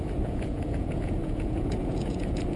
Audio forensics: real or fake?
fake